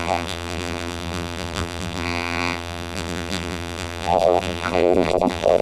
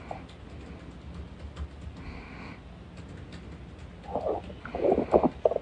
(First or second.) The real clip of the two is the second